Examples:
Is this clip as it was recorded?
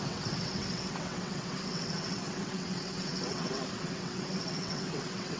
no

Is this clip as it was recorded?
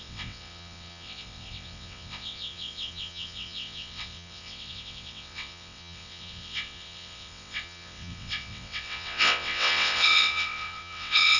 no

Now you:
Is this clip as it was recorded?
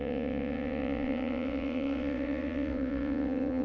no